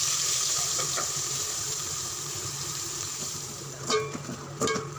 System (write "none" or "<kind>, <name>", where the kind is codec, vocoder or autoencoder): vocoder, BigVGAN v2